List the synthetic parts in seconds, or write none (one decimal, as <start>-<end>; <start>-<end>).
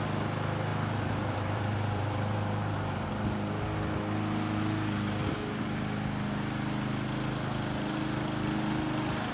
0.7-3.1